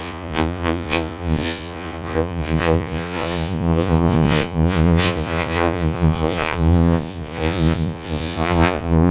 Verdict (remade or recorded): remade